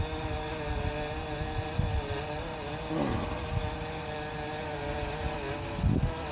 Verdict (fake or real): real